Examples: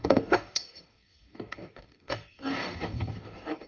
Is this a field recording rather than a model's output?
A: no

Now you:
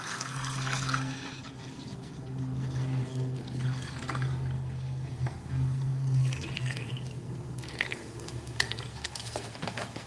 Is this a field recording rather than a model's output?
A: no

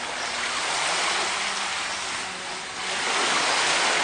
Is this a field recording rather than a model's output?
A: yes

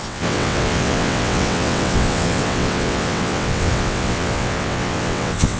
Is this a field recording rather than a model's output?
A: no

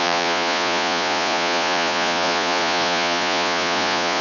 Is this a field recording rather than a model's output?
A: no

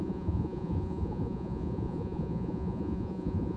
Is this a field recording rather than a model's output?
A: no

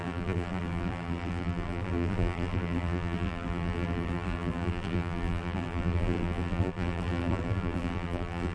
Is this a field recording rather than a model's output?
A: no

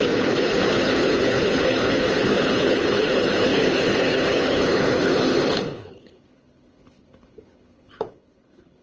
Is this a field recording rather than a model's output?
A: no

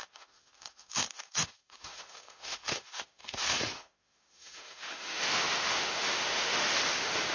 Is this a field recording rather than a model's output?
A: no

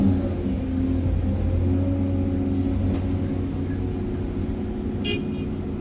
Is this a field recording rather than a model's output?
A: yes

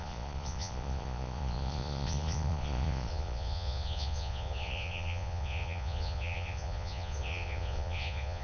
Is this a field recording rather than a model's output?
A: no